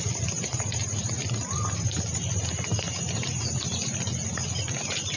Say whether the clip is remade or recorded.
recorded